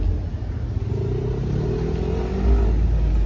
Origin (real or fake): real